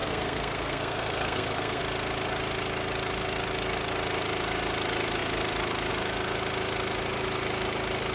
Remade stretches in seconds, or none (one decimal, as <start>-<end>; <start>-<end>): 0.0-1.8